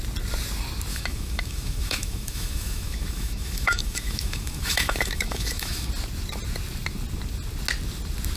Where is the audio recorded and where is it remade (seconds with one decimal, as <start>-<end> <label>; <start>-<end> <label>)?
0.0-0.9 recorded; 0.9-5.9 remade; 5.9-8.4 recorded